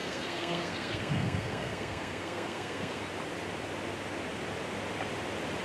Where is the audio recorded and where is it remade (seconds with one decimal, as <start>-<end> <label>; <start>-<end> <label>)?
0.0-3.0 remade; 3.0-5.6 recorded